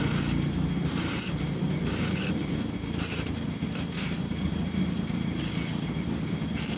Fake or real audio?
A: real